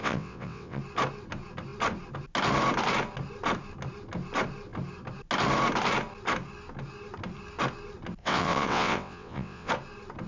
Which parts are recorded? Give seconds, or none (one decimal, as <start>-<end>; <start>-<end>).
0.8-8.2; 9.7-10.3